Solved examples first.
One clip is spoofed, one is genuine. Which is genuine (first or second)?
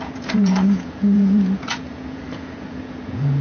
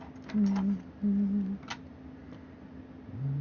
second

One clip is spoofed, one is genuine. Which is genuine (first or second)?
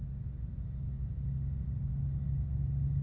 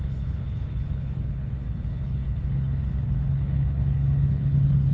first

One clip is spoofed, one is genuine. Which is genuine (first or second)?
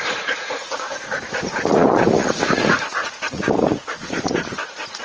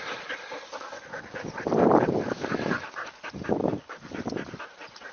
second